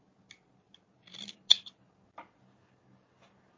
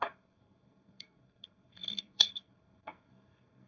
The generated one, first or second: second